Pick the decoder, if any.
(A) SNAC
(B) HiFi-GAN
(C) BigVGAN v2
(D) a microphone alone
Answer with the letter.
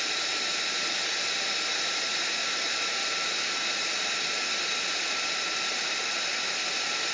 D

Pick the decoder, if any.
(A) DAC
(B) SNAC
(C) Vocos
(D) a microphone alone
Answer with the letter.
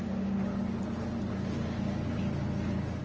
D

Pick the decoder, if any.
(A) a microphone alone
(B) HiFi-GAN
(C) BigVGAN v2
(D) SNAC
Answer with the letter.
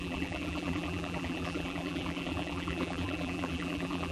C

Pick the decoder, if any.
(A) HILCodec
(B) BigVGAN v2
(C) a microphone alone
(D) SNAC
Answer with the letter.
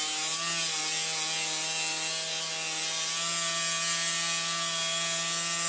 C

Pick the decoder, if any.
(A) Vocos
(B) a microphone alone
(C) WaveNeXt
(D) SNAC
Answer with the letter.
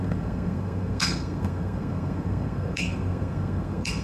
D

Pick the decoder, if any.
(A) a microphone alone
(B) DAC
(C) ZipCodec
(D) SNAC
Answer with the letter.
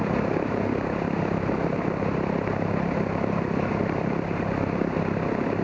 A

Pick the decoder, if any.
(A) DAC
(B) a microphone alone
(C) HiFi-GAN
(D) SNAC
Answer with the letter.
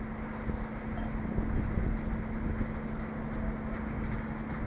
B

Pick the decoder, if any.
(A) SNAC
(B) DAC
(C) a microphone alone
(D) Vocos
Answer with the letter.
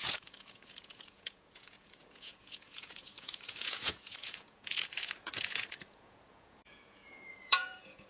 D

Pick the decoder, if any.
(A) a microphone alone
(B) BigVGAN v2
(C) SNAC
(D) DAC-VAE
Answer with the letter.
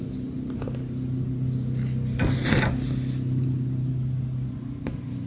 A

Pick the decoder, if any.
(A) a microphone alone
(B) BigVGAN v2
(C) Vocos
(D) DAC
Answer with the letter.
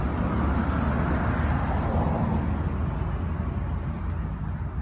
A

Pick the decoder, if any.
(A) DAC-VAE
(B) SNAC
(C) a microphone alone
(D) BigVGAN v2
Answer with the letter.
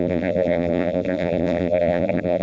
D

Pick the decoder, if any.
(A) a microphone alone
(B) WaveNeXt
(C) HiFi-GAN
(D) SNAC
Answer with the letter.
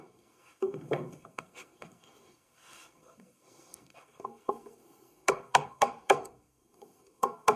D